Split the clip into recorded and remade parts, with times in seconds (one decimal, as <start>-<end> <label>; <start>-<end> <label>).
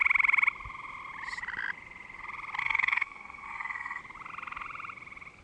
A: 0.0-2.6 recorded; 2.6-4.0 remade; 4.0-5.4 recorded